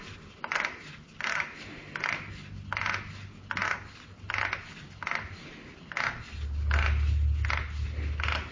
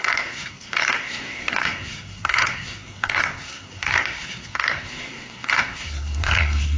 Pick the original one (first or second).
first